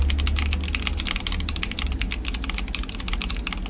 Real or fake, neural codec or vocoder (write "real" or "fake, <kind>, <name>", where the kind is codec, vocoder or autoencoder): real